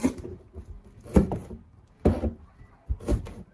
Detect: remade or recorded recorded